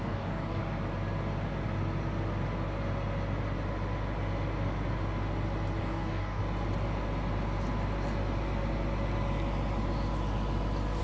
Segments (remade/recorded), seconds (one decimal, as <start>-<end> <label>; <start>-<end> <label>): 0.0-0.6 remade; 0.6-5.8 recorded; 5.8-6.4 remade; 6.4-11.0 recorded